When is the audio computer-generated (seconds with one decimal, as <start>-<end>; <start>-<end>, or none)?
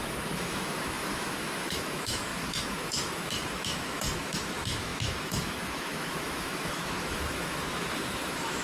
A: 0.0-8.6